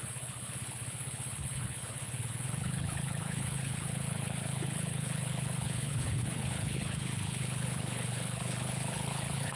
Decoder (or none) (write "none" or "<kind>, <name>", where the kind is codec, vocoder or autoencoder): codec, HILCodec